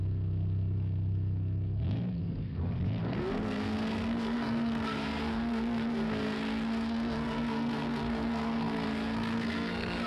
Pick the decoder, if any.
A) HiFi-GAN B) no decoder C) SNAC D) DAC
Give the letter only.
C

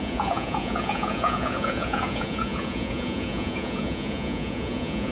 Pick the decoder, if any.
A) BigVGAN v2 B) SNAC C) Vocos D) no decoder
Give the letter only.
C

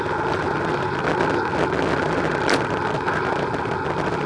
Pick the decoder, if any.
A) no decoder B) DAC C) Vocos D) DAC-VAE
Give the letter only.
A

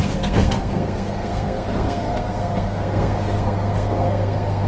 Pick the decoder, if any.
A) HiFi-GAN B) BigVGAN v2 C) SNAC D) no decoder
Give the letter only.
C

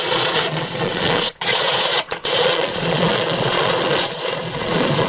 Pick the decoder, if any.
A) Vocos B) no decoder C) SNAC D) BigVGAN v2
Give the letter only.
A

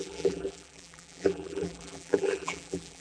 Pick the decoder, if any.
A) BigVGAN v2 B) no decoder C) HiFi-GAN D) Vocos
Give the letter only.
A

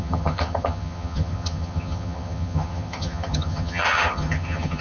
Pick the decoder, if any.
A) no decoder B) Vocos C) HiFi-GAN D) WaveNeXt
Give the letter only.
C